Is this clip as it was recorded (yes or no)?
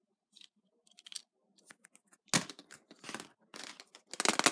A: yes